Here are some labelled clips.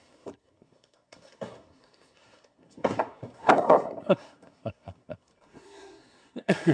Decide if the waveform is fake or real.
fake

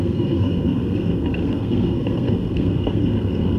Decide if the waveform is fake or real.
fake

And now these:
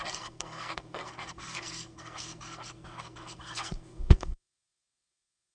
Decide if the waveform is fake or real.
fake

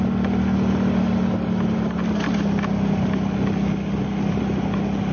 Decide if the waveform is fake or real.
real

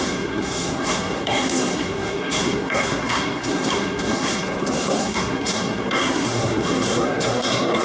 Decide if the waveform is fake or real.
fake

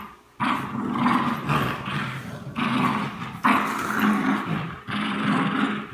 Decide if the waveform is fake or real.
real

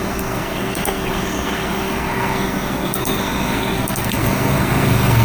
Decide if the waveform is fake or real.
fake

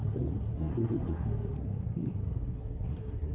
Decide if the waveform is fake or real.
fake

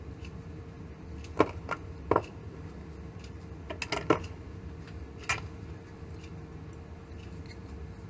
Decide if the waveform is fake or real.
real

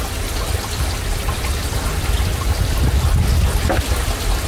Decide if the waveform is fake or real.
real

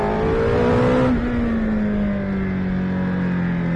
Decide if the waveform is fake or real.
real